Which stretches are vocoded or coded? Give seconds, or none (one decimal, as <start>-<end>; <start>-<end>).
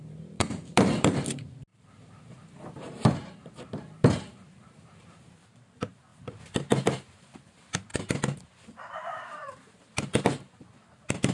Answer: 0.0-11.3